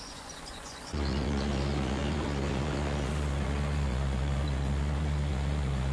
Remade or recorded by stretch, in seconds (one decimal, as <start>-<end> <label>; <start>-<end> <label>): 0.0-5.9 remade